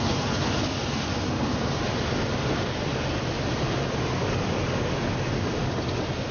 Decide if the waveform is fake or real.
real